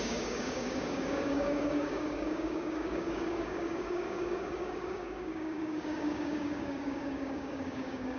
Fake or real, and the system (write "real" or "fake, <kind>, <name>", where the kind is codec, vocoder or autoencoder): fake, codec, DAC